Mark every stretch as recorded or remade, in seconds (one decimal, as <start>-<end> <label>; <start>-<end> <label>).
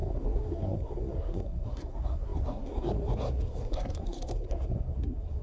0.0-5.4 remade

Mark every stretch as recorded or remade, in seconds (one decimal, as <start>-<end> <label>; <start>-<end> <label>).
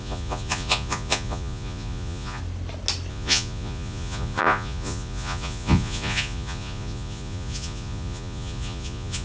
0.0-2.4 remade; 2.4-3.1 recorded; 3.1-9.2 remade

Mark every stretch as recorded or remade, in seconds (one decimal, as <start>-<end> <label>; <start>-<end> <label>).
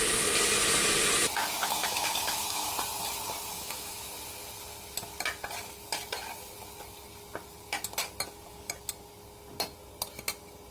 0.0-1.6 recorded; 1.6-2.7 remade; 2.7-3.5 recorded; 3.5-4.1 remade; 4.1-10.7 recorded